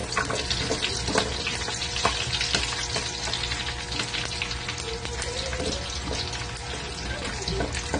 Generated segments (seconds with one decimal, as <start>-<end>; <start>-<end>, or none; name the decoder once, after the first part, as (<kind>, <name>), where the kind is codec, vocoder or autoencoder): none